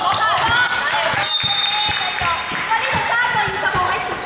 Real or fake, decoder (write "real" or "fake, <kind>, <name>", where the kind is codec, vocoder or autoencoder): real